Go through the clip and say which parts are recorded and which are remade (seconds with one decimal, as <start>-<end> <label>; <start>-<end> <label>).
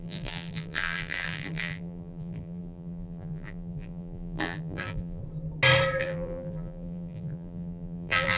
0.0-5.2 remade; 5.2-6.0 recorded; 6.0-8.4 remade